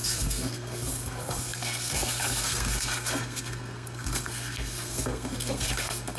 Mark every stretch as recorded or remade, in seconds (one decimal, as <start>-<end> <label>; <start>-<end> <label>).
0.0-6.2 remade